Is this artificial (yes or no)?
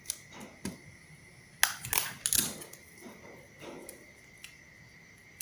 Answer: no